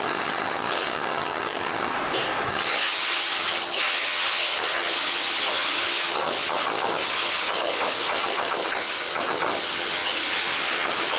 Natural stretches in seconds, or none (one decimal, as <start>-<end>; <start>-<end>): 1.9-2.5